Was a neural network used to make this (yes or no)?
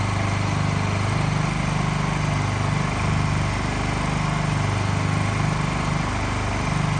no